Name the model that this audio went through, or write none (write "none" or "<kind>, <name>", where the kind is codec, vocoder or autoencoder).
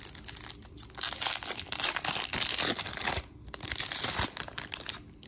none